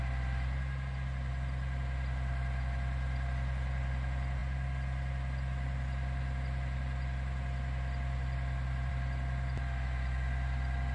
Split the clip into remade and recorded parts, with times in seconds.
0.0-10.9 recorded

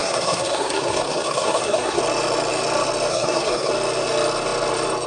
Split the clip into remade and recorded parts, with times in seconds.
0.0-2.0 remade; 2.0-3.1 recorded; 3.1-3.7 remade; 3.7-5.1 recorded

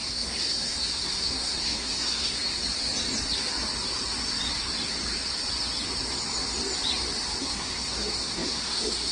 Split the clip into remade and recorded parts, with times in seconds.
0.0-2.6 remade; 2.6-7.4 recorded; 7.4-9.1 remade

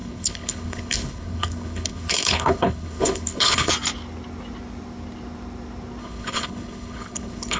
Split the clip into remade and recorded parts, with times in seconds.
0.0-3.7 remade; 3.7-6.0 recorded; 6.0-7.6 remade